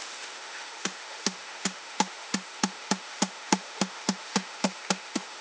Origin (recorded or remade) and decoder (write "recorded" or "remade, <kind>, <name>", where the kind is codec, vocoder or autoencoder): remade, autoencoder, DAC-VAE